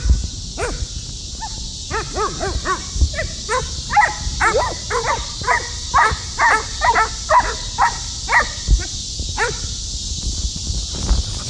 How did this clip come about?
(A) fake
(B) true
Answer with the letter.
B